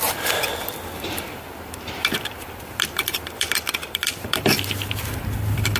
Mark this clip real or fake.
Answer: fake